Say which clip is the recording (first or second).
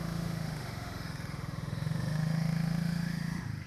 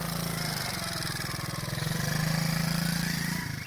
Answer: second